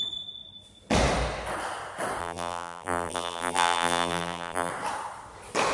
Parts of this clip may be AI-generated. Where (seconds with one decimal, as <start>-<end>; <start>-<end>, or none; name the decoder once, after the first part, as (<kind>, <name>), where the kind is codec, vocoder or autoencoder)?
2.2-4.7 (vocoder, BigVGAN v2)